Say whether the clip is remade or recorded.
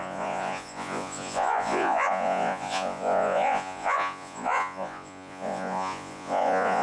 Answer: remade